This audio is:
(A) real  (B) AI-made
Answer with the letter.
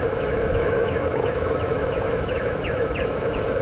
B